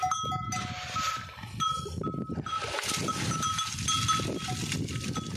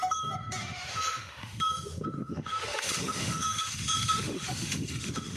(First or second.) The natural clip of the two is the first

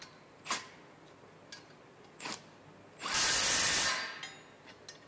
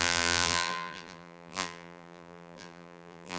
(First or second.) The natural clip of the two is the first